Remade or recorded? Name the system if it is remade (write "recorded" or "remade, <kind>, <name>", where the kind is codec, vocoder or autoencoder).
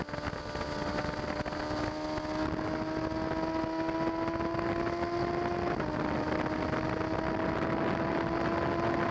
recorded